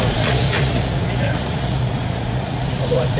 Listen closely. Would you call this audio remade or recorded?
remade